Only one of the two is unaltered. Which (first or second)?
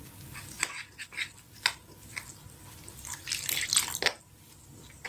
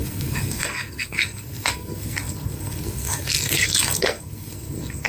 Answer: first